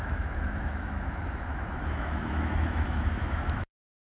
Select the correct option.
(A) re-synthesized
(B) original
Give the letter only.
A